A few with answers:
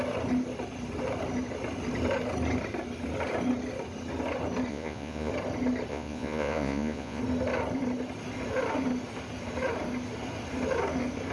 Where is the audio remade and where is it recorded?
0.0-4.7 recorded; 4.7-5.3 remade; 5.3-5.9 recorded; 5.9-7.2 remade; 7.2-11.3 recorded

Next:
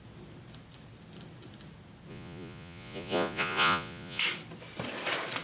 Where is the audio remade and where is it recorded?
0.0-2.1 recorded; 2.1-4.2 remade; 4.2-5.4 recorded

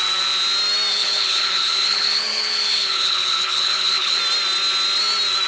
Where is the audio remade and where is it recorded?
0.0-0.9 recorded; 0.9-4.2 remade; 4.2-5.5 recorded

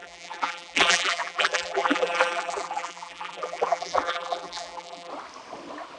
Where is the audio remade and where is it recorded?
0.0-5.1 remade; 5.1-6.0 recorded

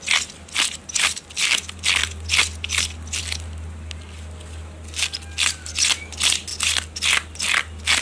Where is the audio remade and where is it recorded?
0.0-8.0 recorded